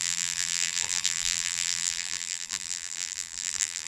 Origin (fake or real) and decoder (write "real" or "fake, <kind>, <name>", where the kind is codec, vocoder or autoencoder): fake, vocoder, BigVGAN v2